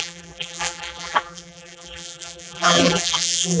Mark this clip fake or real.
fake